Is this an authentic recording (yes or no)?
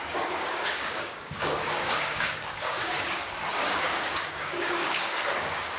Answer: no